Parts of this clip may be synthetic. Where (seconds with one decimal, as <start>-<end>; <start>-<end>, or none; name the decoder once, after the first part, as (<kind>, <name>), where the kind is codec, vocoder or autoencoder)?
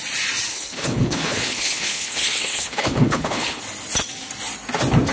0.5-3.6 (codec, HILCodec)